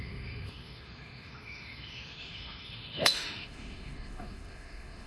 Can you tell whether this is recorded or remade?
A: remade